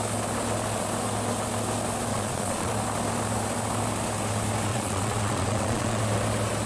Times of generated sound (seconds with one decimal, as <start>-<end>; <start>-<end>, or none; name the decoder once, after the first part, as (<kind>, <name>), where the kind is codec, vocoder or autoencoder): 2.1-2.7 (vocoder, Vocos); 4.7-6.0